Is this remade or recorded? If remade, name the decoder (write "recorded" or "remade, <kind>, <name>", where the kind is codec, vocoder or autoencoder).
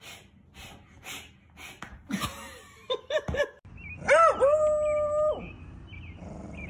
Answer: recorded